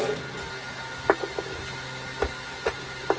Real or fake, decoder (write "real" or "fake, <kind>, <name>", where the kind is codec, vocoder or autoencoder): real